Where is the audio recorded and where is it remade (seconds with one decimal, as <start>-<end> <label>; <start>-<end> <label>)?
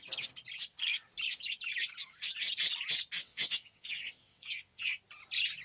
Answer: 0.0-3.2 recorded; 3.2-5.0 remade; 5.0-5.6 recorded